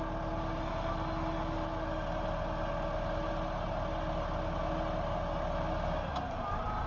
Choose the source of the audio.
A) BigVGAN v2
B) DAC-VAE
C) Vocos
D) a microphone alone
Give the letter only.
D